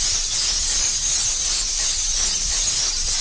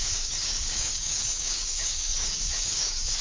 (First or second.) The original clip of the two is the first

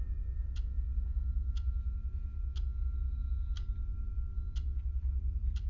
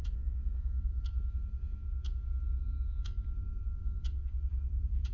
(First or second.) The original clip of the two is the first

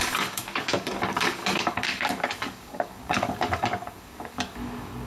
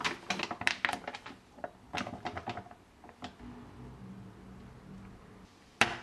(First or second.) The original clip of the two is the second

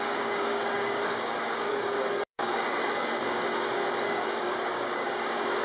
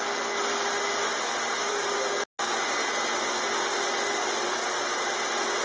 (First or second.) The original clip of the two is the second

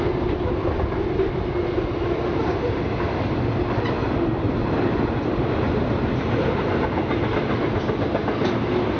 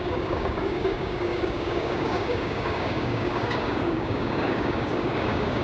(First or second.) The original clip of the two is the first